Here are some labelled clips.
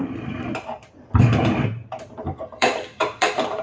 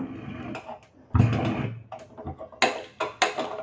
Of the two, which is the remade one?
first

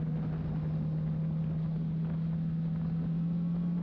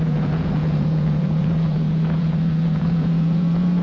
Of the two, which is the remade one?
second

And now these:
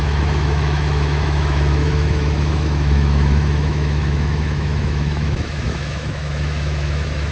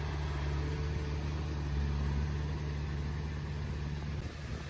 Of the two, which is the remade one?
first